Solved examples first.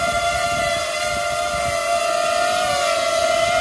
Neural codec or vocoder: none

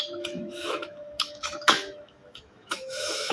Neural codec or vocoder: autoencoder, DAC-VAE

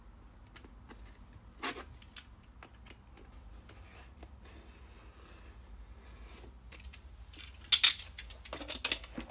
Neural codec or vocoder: none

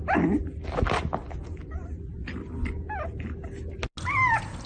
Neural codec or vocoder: none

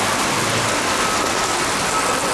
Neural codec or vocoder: none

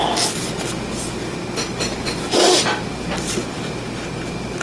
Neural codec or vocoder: none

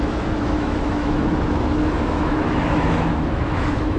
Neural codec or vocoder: autoencoder, DAC-VAE